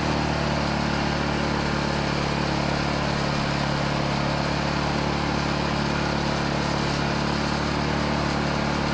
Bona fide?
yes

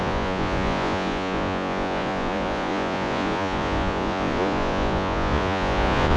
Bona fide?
no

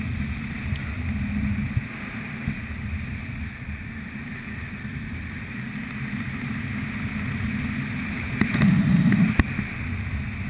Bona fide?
yes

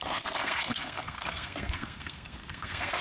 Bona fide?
no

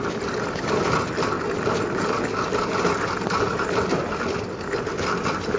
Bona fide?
yes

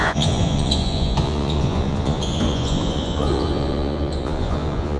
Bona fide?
no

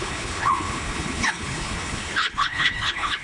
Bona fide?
no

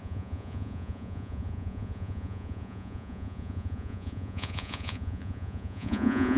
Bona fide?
no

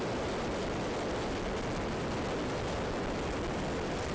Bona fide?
yes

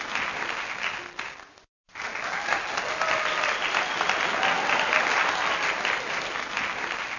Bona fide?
yes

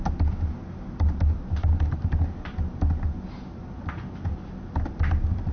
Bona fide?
yes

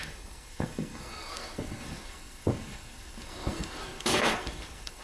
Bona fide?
no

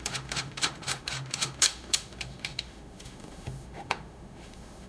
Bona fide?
no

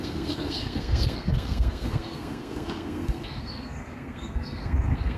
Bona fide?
no